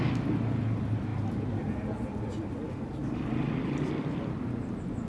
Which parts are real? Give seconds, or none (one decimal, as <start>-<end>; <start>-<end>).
0.0-3.0; 3.5-5.1